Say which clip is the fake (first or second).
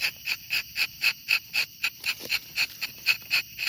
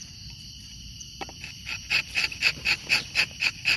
second